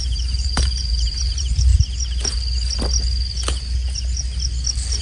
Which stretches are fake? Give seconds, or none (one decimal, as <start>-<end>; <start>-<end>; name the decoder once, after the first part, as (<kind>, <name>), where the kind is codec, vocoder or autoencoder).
0.0-1.7 (vocoder, BigVGAN v2)